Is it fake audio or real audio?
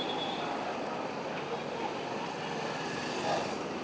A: real